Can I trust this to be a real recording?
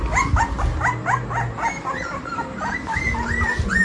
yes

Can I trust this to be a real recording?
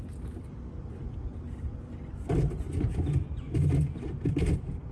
yes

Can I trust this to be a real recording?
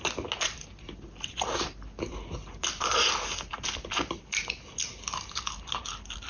yes